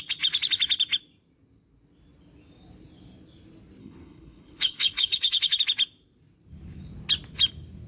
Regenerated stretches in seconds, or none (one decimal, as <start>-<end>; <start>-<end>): 3.8-5.6